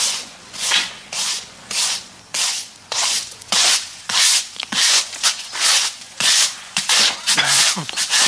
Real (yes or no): no